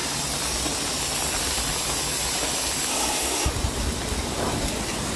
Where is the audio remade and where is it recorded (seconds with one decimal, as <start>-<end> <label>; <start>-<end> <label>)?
0.0-2.9 recorded; 2.9-3.5 remade; 3.5-5.2 recorded